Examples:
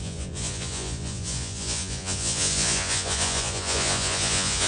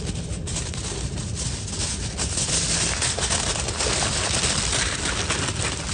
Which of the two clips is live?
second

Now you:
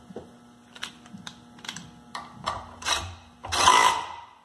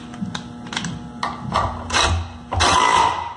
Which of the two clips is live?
second